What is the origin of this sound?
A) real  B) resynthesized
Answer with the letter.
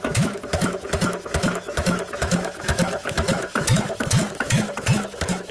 B